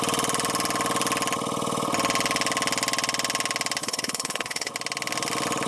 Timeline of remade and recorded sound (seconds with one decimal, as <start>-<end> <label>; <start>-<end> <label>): 0.0-3.8 recorded; 3.8-4.7 remade; 4.7-5.7 recorded